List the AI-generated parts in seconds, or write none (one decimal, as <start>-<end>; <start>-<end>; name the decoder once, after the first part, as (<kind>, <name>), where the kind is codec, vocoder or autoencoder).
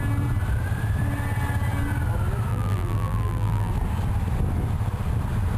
2.5-3.7 (vocoder, BigVGAN v2)